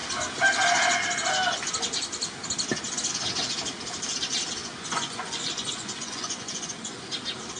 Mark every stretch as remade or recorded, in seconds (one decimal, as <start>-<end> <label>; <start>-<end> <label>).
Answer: 0.0-4.6 recorded; 4.6-7.1 remade; 7.1-7.6 recorded